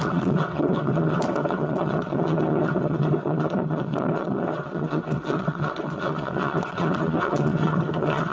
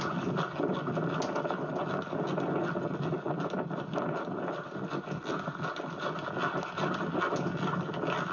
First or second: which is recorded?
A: second